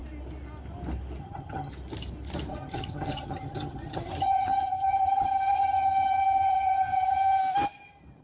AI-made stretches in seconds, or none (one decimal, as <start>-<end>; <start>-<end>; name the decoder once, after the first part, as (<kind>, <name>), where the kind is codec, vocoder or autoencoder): 1.2-1.7 (vocoder, HiFi-GAN); 2.5-7.4